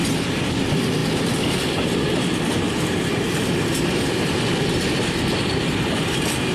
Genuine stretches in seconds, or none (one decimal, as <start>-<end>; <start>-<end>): 0.0-6.5